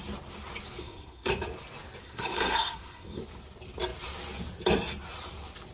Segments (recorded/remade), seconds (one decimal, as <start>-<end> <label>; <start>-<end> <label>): 0.0-0.8 recorded; 0.8-1.3 remade; 1.3-2.0 recorded; 2.0-3.2 remade; 3.2-5.7 recorded